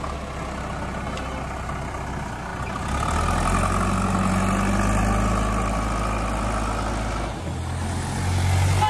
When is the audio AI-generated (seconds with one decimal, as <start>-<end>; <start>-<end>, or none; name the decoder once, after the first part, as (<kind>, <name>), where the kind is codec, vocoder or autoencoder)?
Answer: none